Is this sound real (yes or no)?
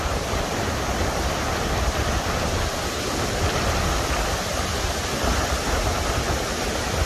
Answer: yes